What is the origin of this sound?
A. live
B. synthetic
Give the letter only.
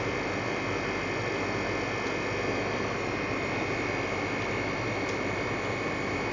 A